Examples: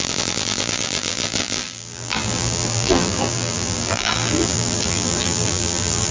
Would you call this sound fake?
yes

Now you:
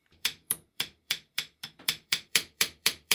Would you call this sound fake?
yes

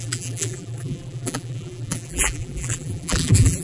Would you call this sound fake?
yes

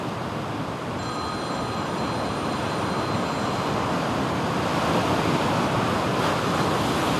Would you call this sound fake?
no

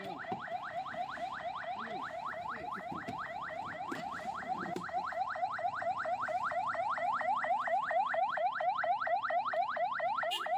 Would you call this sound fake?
yes